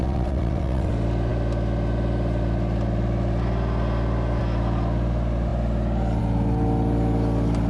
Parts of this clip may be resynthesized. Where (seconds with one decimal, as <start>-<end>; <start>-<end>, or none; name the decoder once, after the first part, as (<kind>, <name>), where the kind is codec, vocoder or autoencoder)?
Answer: 0.0-0.9 (vocoder, WaveNeXt)